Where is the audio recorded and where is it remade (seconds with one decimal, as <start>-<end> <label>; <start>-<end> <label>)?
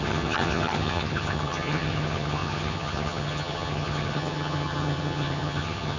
0.0-6.0 remade